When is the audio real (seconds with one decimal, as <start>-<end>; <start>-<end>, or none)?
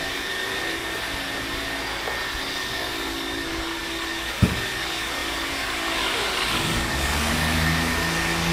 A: 0.8-2.4